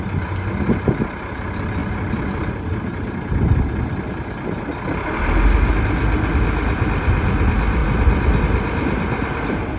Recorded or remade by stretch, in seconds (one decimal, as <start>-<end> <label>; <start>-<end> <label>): 0.0-9.8 recorded